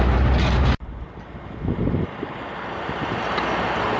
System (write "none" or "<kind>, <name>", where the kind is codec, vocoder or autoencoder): none